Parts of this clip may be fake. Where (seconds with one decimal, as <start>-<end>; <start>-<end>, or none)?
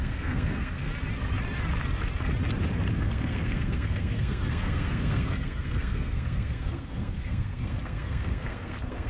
0.0-0.9; 2.9-9.1